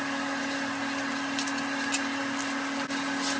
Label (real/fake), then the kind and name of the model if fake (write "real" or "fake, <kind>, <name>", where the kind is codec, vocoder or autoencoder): real